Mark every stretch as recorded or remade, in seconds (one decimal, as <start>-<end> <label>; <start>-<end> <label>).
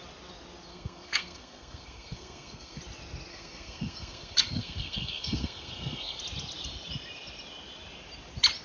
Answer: 0.0-0.7 recorded; 0.7-2.8 remade; 2.8-3.3 recorded; 3.3-6.2 remade; 6.2-8.6 recorded